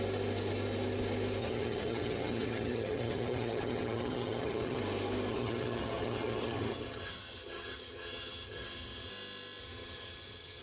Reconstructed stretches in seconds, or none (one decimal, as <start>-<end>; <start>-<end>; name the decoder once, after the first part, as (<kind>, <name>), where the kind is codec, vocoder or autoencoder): 1.4-4.8 (vocoder, HiFi-GAN); 5.3-9.1; 9.6-10.6